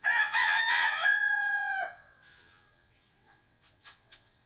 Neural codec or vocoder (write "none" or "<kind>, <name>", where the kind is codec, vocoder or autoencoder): vocoder, WaveNeXt